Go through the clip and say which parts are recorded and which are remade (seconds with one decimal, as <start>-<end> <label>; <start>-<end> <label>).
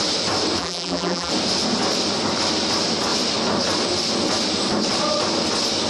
0.0-0.6 recorded; 0.6-1.3 remade; 1.3-5.9 recorded